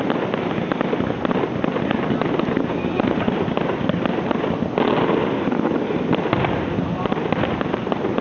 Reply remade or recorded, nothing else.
recorded